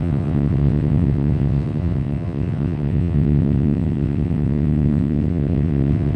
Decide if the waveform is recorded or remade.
remade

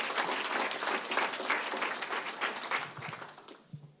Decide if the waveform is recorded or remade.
recorded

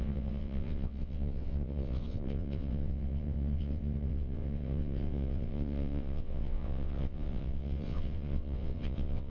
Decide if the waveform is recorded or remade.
remade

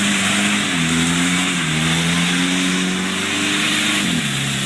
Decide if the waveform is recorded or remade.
recorded